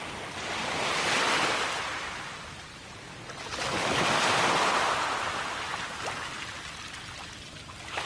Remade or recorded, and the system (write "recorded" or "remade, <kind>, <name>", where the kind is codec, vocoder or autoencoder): recorded